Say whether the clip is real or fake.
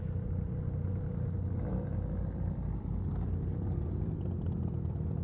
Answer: real